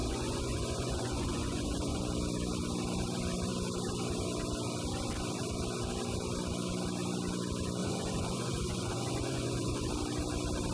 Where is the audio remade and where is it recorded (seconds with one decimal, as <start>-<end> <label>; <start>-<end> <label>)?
0.0-2.0 remade; 2.0-7.8 recorded; 7.8-9.9 remade; 9.9-10.7 recorded